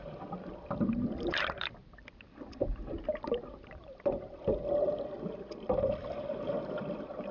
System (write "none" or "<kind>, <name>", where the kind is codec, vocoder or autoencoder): vocoder, BigVGAN v2